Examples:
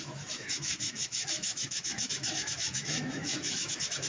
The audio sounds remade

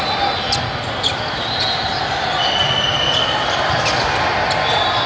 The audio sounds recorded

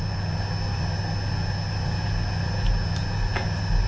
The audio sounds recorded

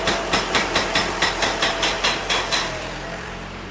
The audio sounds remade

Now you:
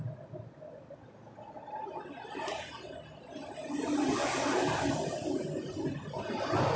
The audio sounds recorded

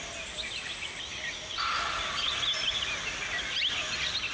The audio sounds recorded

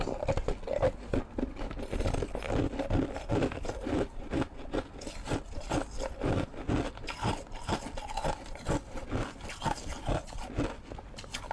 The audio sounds recorded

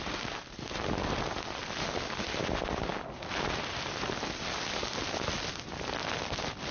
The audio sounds recorded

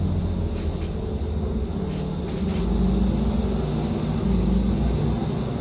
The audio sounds recorded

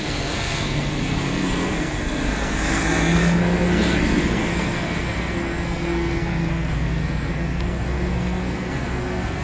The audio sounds remade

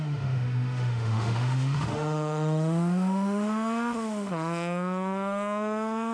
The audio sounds remade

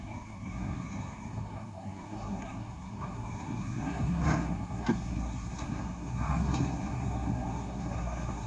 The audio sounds remade